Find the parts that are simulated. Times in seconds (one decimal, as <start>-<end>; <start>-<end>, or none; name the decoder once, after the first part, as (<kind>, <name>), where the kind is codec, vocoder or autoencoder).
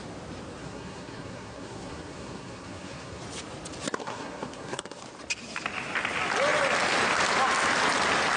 0.6-3.2 (codec, SNAC); 4.0-5.0